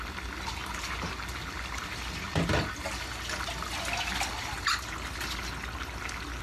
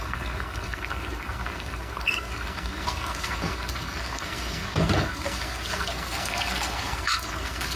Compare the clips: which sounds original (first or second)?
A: first